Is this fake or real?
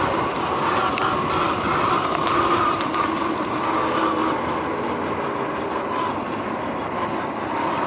real